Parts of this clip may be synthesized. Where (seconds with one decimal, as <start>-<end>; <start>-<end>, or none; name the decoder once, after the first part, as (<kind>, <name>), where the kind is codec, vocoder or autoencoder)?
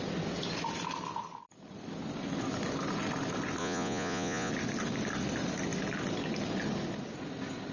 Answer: 3.6-4.5 (vocoder, Vocos)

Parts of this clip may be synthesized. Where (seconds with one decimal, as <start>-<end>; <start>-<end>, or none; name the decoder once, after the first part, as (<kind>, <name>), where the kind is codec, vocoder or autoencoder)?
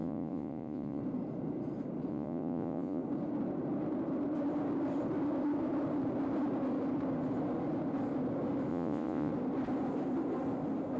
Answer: 0.0-1.0 (vocoder, Vocos); 2.1-3.0; 8.7-9.3